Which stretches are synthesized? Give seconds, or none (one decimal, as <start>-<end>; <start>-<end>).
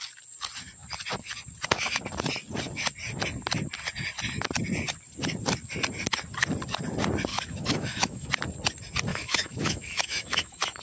7.3-8.3; 9.1-10.8